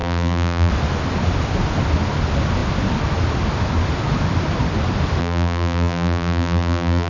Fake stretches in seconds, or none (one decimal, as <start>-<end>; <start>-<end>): 0.0-0.7; 5.2-7.1